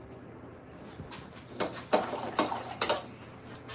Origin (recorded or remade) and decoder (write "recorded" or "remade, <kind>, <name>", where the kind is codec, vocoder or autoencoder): recorded